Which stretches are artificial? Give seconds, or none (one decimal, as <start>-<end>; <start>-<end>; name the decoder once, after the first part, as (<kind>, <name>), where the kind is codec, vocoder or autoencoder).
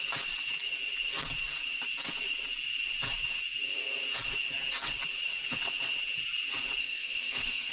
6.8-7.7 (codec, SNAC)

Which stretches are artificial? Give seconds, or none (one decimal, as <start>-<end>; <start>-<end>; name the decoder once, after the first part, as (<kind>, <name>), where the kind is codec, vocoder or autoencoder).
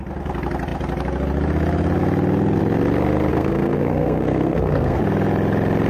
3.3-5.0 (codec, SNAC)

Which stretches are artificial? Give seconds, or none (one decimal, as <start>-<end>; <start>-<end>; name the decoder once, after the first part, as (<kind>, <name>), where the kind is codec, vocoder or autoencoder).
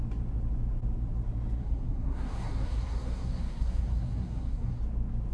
1.6-4.8 (codec, SNAC)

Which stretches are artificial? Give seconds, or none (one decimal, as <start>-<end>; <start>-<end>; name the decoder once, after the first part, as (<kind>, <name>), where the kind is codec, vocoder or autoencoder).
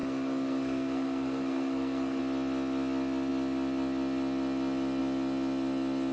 0.0-2.2 (codec, SNAC)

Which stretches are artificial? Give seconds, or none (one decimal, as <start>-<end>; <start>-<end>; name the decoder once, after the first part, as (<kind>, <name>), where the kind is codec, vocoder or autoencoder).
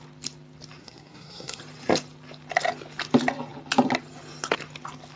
0.8-1.6 (codec, SNAC)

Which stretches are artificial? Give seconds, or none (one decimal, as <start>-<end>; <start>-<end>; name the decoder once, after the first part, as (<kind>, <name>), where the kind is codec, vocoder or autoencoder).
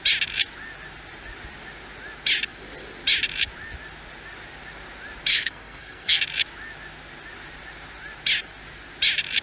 5.3-6.2 (codec, SNAC)